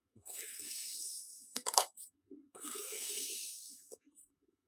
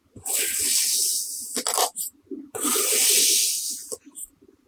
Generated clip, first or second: first